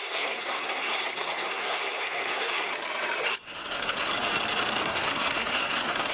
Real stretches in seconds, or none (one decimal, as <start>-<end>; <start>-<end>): 2.7-3.3; 4.1-4.8